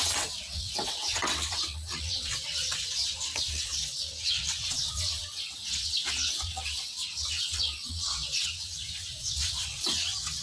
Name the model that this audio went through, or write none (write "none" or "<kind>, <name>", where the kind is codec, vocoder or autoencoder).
vocoder, WaveNeXt